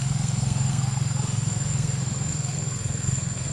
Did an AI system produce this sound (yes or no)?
yes